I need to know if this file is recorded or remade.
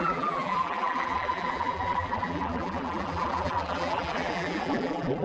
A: remade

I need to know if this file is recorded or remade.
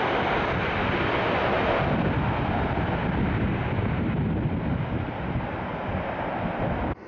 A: recorded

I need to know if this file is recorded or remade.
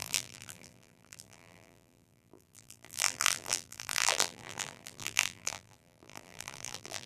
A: remade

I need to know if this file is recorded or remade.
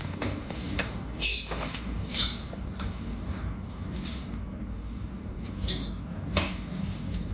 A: remade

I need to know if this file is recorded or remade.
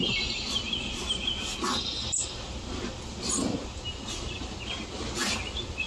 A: recorded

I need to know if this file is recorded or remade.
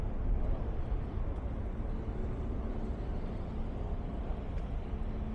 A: recorded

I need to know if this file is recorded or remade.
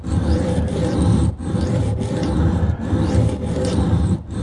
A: remade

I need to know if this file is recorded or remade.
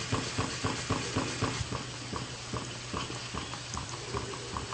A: recorded